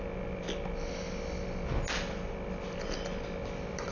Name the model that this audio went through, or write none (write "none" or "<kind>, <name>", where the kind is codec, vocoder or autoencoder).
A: none